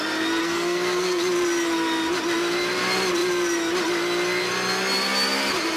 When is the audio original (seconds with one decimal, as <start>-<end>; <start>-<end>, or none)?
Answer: 0.0-0.4; 1.2-5.8